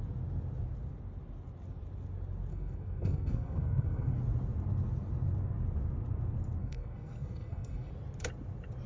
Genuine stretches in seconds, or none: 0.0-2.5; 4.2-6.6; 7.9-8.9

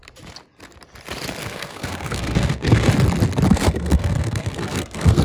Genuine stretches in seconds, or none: 0.0-1.4; 2.9-3.5

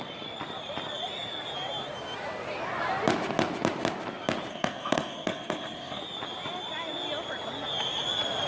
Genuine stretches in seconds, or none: 0.0-4.5; 6.0-8.5

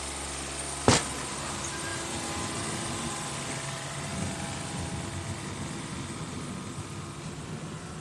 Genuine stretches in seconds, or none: 0.0-8.0

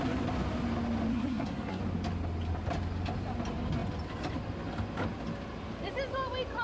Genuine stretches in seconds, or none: 0.0-1.1; 1.8-6.6

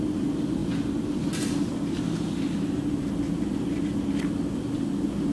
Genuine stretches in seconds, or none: 0.0-5.3

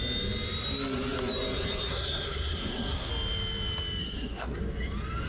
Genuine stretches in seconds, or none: 0.0-1.9; 3.1-4.0; 4.6-5.3

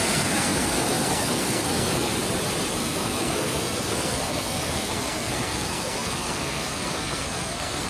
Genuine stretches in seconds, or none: 2.1-2.7